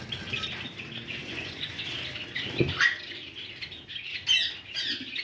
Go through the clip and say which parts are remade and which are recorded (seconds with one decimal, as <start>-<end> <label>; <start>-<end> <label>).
0.0-1.2 recorded; 1.2-1.8 remade; 1.8-5.2 recorded